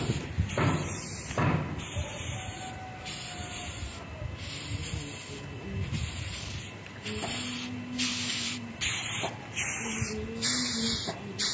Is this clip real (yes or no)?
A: yes